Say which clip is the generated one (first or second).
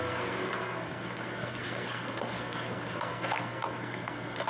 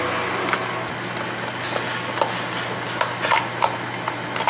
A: first